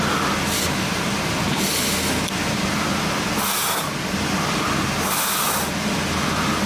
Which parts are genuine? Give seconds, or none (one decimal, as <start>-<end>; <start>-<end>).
0.0-6.7

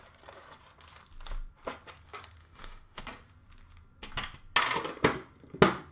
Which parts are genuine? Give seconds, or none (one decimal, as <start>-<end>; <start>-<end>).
0.0-2.4; 3.0-5.9

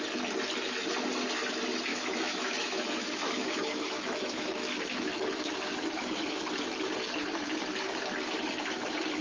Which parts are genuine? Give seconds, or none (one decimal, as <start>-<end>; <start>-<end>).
0.0-1.9; 6.4-9.2